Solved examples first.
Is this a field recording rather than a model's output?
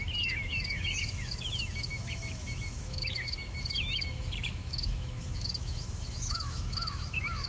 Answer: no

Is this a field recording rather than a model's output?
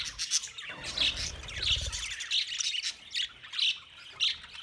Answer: yes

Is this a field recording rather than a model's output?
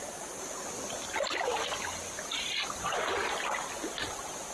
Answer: yes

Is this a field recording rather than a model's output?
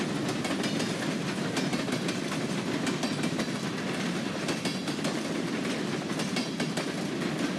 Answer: yes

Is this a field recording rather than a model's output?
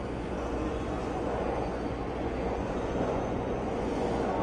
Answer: no